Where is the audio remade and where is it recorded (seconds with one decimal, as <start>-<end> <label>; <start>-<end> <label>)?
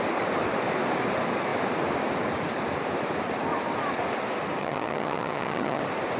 0.0-4.6 recorded; 4.6-5.8 remade; 5.8-6.2 recorded